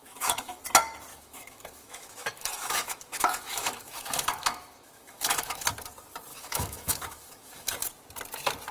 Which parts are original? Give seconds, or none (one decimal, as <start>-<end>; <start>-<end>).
0.6-1.1; 5.7-6.3; 7.7-8.7

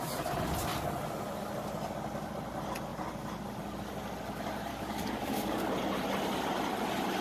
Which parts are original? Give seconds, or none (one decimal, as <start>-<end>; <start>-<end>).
0.0-4.7; 5.7-7.2

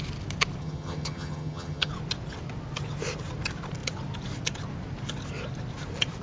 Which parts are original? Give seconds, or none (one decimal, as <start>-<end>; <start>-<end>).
0.0-0.6; 1.9-6.2

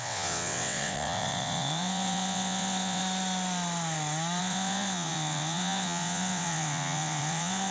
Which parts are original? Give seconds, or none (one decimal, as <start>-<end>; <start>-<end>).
3.0-4.4